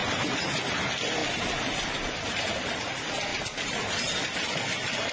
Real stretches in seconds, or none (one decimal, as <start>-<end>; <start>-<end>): 0.6-1.2; 2.5-3.3

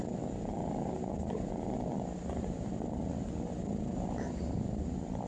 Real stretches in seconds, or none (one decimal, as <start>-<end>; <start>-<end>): 0.0-5.3